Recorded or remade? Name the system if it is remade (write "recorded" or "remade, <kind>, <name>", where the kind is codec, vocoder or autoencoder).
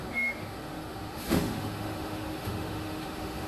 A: remade, autoencoder, DAC-VAE